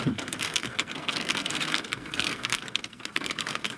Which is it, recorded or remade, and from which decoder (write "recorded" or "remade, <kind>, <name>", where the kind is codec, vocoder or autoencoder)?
remade, codec, SNAC